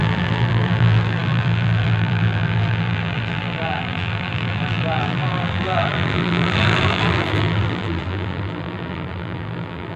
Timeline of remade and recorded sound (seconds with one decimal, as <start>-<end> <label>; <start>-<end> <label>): 0.0-10.0 remade